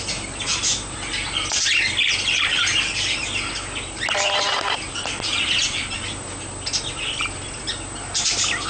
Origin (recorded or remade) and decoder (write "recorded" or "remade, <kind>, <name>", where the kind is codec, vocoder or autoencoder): recorded